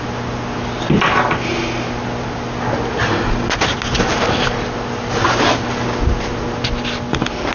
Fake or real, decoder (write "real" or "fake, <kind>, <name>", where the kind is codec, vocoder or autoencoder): real